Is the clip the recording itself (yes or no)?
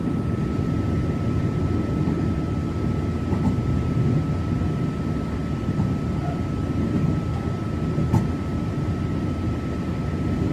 yes